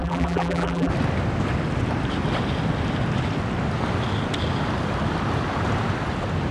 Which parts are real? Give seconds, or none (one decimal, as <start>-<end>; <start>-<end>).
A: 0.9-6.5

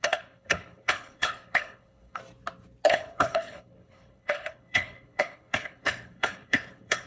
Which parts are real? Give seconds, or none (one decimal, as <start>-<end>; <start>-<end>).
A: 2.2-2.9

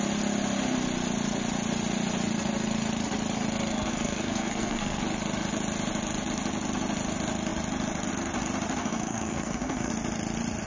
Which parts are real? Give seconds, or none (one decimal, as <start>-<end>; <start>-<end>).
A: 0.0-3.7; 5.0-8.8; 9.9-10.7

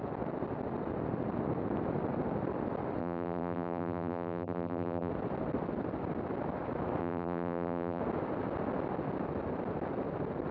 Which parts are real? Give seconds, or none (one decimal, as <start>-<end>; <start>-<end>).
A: 0.0-3.0; 5.1-7.0; 8.0-10.5

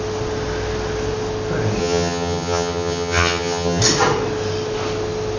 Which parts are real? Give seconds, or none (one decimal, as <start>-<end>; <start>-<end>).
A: 0.0-1.8; 3.8-5.4